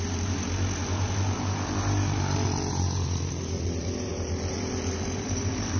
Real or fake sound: real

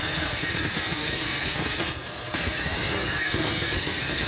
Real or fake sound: fake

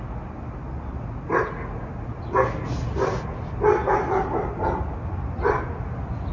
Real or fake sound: real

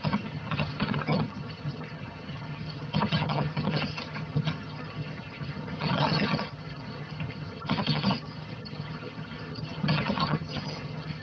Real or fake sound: fake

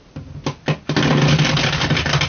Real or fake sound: real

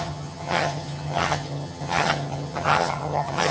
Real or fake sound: fake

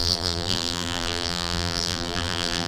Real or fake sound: fake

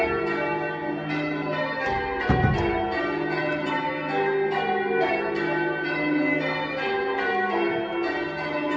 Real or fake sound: real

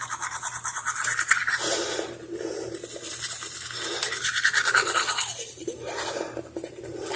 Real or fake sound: real